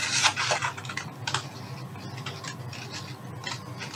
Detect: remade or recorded recorded